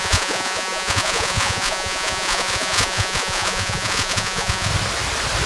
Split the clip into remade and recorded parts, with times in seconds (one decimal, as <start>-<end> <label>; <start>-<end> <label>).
0.0-4.7 remade; 4.7-5.5 recorded